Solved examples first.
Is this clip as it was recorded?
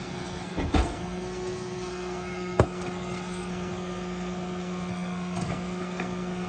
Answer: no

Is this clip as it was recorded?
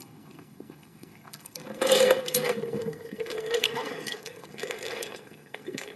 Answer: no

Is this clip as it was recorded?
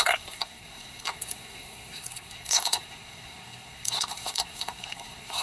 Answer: no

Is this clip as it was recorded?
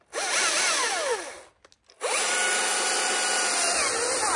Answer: yes